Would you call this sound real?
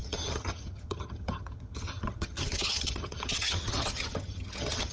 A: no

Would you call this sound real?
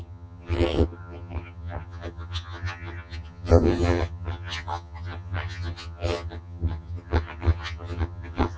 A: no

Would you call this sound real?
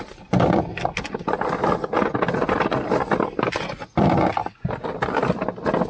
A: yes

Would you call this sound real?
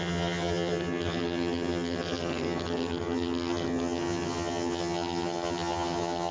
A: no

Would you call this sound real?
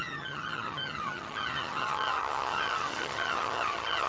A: no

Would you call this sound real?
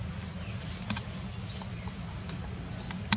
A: yes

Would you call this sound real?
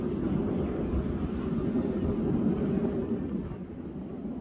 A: yes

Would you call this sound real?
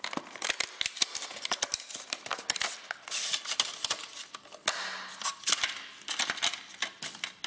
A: yes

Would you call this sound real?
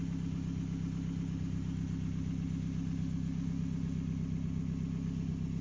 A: yes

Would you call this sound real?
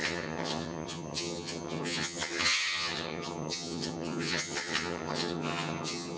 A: no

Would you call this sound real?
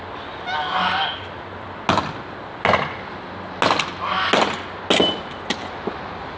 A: yes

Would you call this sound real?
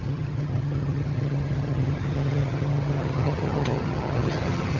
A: no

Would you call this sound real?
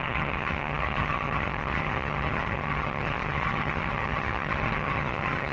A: no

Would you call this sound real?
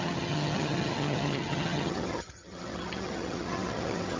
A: no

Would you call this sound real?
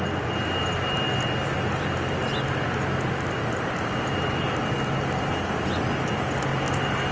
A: yes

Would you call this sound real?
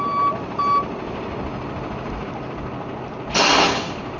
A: yes